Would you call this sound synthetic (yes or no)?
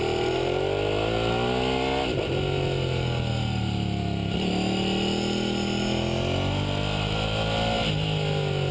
no